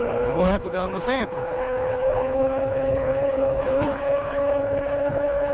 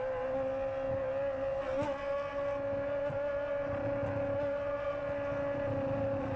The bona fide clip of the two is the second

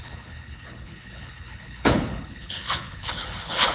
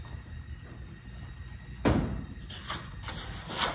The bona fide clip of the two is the second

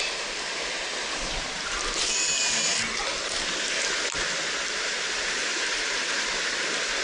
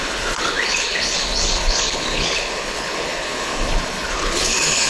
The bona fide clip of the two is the first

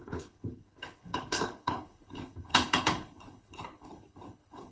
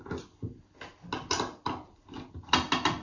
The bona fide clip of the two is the second